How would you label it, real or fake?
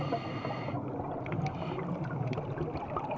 real